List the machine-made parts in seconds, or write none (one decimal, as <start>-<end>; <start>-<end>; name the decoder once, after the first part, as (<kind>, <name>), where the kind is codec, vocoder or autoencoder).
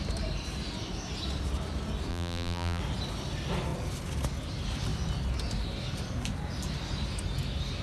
2.1-2.8 (vocoder, BigVGAN v2)